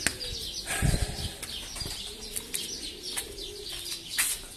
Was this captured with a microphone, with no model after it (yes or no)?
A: yes